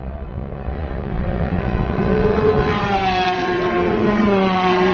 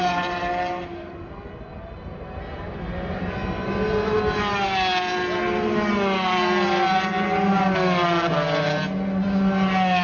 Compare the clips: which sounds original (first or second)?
second